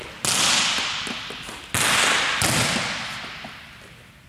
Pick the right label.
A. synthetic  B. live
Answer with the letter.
B